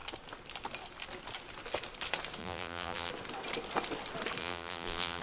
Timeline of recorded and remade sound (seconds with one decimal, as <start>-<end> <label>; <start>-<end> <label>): 0.0-2.4 recorded; 2.4-3.1 remade; 3.1-4.4 recorded; 4.4-5.2 remade

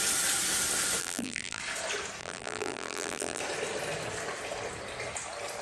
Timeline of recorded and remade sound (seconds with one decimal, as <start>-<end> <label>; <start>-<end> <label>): 0.0-1.0 recorded; 1.0-1.6 remade; 1.6-2.2 recorded; 2.2-3.4 remade; 3.4-5.6 recorded

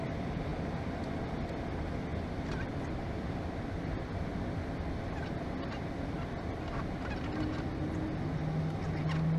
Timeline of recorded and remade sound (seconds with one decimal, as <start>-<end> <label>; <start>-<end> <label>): 0.0-9.4 recorded

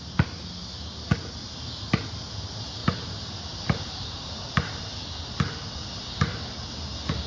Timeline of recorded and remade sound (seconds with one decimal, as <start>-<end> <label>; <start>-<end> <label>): 0.0-2.8 recorded; 2.8-4.4 remade; 4.4-7.3 recorded

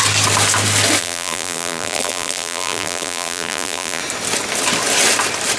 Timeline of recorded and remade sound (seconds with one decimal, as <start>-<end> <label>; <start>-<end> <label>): 0.0-1.0 recorded; 1.0-4.0 remade; 4.0-5.6 recorded

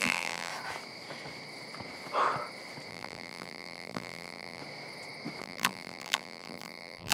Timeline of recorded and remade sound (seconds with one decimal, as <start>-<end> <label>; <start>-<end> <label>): 0.0-0.5 remade; 0.5-2.9 recorded; 2.9-4.6 remade; 4.6-5.4 recorded; 5.4-7.1 remade

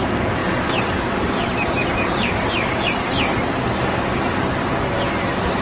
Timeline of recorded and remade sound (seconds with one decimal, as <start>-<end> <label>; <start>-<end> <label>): 0.0-0.4 recorded; 0.4-3.8 remade; 3.8-5.6 recorded

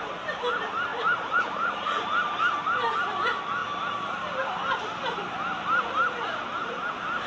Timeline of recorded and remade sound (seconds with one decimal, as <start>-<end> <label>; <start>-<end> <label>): 0.0-0.9 recorded; 0.9-2.1 remade; 2.1-7.3 recorded